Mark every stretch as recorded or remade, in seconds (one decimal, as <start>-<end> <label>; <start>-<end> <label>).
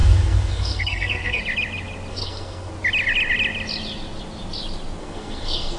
0.0-1.4 remade; 1.4-2.1 recorded; 2.1-2.7 remade; 2.7-5.0 recorded; 5.0-5.8 remade